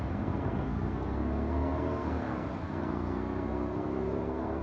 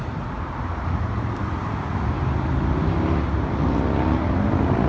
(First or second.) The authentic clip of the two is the second